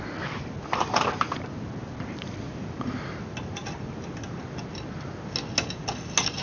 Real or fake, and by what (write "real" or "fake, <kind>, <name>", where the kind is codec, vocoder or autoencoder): real